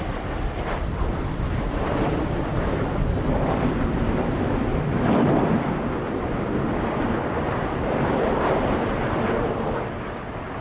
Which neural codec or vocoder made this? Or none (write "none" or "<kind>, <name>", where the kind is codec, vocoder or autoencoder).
vocoder, BigVGAN v2